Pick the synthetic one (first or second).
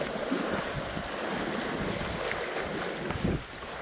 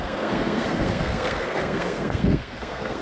second